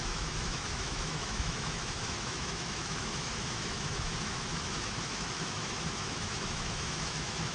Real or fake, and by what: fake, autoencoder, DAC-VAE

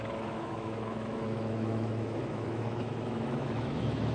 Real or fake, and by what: fake, autoencoder, DAC-VAE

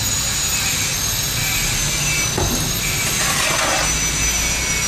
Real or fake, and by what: real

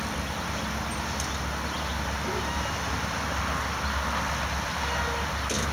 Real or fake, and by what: real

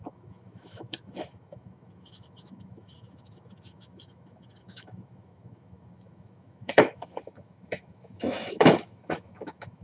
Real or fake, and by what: fake, autoencoder, DAC-VAE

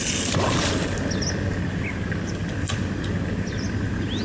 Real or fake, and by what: real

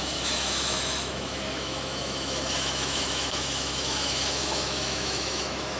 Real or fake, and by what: fake, autoencoder, DAC-VAE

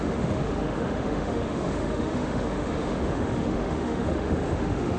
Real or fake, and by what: fake, autoencoder, DAC-VAE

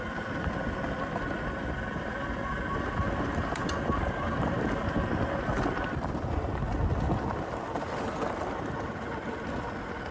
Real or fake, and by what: real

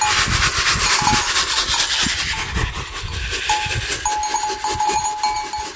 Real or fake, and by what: real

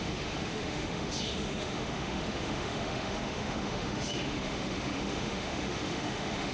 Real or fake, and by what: fake, autoencoder, DAC-VAE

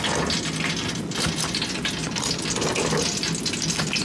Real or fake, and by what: real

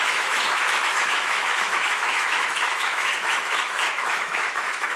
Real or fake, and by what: fake, autoencoder, DAC-VAE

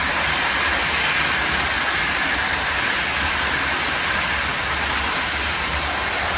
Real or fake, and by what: real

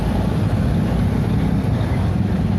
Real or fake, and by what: real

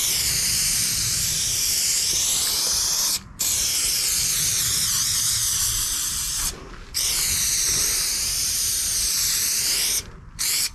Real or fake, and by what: real